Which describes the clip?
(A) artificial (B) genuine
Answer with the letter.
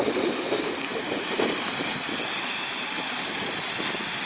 B